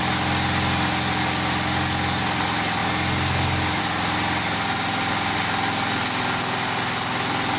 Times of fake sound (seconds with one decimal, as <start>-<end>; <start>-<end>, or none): none